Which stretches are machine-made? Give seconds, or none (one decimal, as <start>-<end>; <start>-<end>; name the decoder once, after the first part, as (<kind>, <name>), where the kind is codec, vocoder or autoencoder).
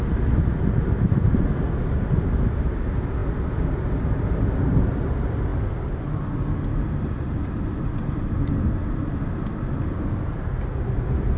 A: none